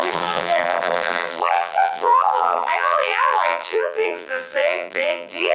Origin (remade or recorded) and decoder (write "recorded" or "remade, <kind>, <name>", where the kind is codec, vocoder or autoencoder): remade, vocoder, BigVGAN v2